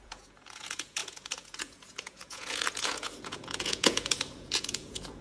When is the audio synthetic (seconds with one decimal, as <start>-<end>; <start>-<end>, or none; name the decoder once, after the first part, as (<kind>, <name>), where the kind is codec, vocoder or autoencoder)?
0.0-5.2 (vocoder, Vocos)